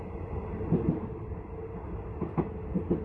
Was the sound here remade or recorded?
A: recorded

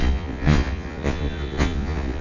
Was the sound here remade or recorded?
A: remade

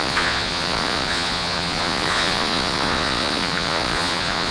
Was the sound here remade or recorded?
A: remade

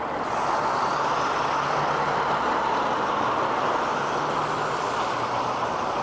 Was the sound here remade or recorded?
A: recorded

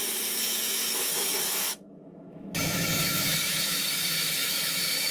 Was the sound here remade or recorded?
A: remade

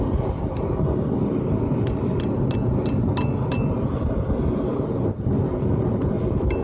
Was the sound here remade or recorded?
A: recorded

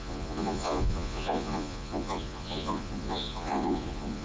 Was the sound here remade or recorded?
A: remade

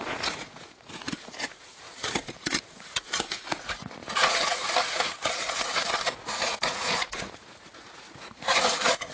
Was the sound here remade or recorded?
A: remade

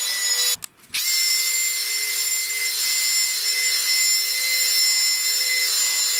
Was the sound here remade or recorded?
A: recorded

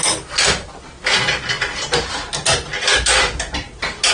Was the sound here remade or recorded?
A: recorded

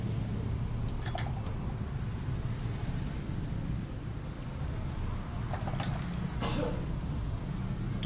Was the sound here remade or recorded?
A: recorded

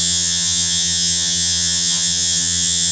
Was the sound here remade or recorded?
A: remade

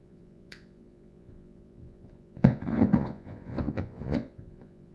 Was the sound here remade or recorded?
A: remade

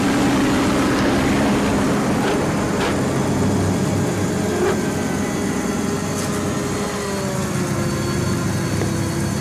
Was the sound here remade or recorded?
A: recorded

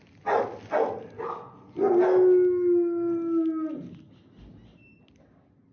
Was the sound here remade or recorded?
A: recorded